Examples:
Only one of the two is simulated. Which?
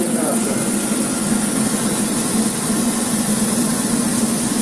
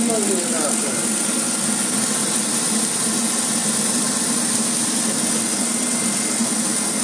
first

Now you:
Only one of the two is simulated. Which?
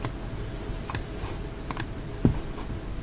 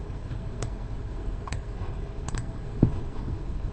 second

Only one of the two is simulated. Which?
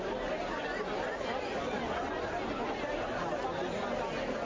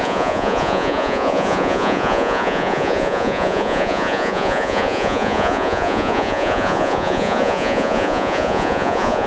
second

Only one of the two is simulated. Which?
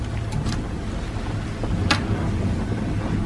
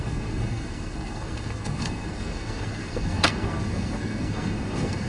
second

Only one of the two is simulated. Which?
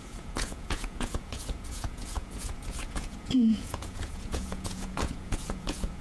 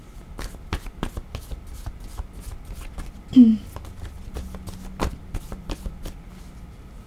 first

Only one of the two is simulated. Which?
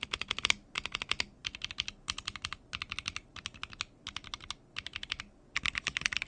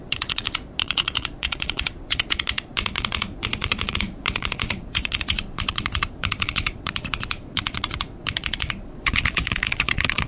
second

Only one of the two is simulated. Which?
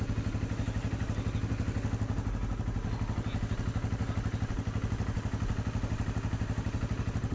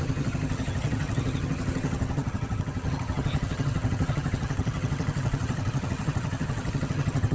second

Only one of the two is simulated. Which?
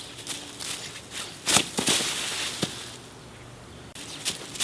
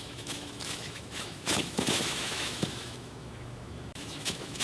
second